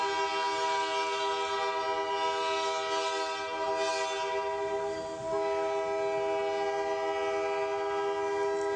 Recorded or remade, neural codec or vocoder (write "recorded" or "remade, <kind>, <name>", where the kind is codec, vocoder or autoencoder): recorded